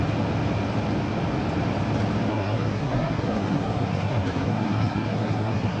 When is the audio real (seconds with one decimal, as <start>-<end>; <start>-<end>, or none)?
0.0-2.3